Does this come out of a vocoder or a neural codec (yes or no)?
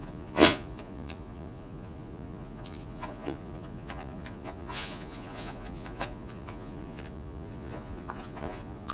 yes